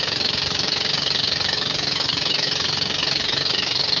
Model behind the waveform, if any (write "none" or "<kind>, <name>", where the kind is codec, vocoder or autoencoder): codec, DAC